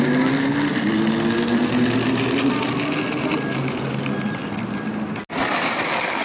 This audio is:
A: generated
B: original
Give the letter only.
B